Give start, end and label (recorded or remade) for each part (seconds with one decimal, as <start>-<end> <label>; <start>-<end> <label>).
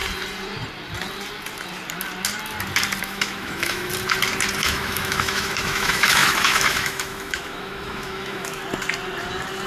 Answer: 0.0-3.0 recorded; 3.0-3.9 remade; 3.9-4.6 recorded; 4.6-8.6 remade; 8.6-9.7 recorded